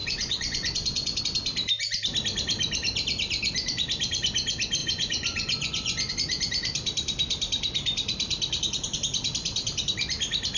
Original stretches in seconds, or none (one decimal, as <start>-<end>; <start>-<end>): 1.2-4.8; 6.1-10.6